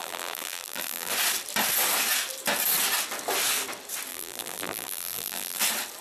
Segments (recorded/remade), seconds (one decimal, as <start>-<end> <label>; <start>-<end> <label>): 0.0-1.1 remade; 1.1-4.1 recorded; 4.1-5.6 remade; 5.6-6.0 recorded